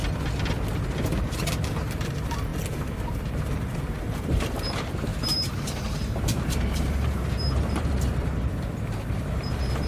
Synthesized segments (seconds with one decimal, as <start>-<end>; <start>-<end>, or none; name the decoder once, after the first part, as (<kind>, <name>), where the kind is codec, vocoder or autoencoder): 2.0-9.9 (vocoder, BigVGAN v2)